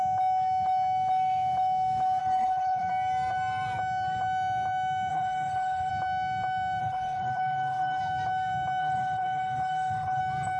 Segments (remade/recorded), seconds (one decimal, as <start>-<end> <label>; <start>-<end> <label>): 0.0-2.2 recorded; 2.2-2.9 remade; 2.9-5.1 recorded; 5.1-5.9 remade; 5.9-6.8 recorded; 6.8-8.0 remade; 8.0-8.8 recorded; 8.8-10.2 remade; 10.2-10.6 recorded